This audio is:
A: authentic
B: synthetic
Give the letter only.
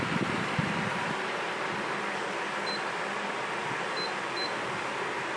A